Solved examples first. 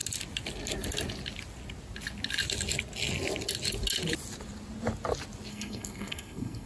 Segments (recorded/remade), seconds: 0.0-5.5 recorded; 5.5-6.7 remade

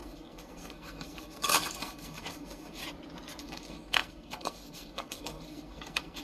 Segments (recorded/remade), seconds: 0.0-2.8 remade; 2.8-3.4 recorded; 3.4-6.2 remade

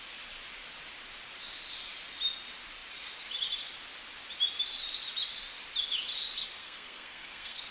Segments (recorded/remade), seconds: 0.0-6.6 recorded; 6.6-7.7 remade

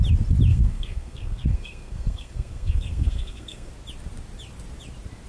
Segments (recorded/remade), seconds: 0.0-0.5 recorded; 0.5-3.7 remade; 3.7-5.3 recorded

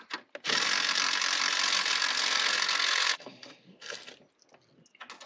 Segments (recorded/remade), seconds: 0.0-1.9 recorded; 1.9-4.1 remade; 4.1-5.3 recorded

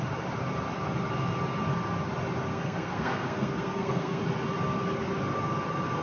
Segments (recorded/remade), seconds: 0.0-2.5 recorded; 2.5-4.2 remade; 4.2-6.0 recorded